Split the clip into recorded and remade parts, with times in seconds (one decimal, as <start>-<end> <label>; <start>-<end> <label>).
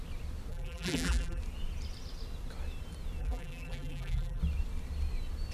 0.0-0.5 recorded; 0.5-1.4 remade; 1.4-3.2 recorded; 3.2-4.4 remade; 4.4-5.5 recorded